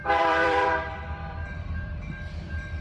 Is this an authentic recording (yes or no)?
no